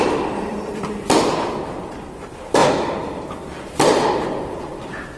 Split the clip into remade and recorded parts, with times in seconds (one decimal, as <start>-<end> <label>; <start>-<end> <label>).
0.0-5.2 remade